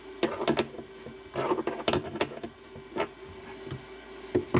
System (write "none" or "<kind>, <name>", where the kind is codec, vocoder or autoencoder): none